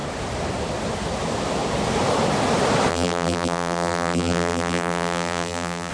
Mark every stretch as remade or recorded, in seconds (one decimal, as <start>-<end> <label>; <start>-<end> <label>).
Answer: 0.0-2.9 recorded; 2.9-5.9 remade